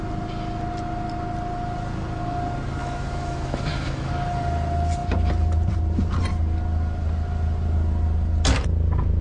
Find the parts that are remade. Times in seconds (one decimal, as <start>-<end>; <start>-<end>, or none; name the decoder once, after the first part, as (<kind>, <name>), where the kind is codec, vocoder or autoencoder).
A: 2.8-4.1 (autoencoder, DAC-VAE)